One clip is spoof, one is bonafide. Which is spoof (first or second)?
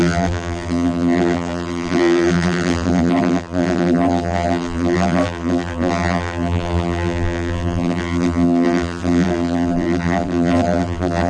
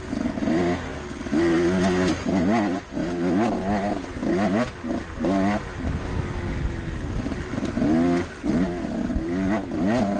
first